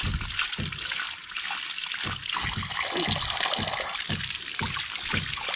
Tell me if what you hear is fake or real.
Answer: real